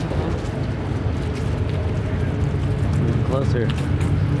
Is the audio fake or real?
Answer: real